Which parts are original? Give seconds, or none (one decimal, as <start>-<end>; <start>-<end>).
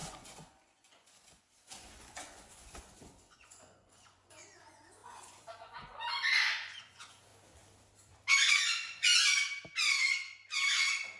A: 7.3-8.5; 9.1-11.2